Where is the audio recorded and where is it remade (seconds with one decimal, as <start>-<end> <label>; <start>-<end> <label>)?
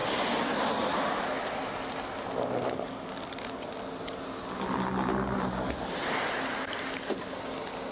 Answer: 0.0-7.9 recorded